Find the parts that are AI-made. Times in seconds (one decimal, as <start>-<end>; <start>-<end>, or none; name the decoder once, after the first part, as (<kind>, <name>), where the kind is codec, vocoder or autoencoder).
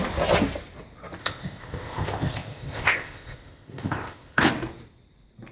1.2-4.5 (codec, ZipCodec)